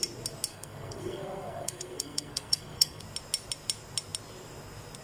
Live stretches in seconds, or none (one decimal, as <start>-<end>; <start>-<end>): 0.0-0.5; 3.0-5.0